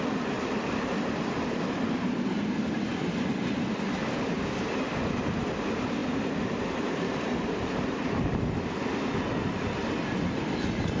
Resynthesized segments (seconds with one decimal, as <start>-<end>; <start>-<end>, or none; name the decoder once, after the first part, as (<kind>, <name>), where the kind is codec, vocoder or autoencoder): none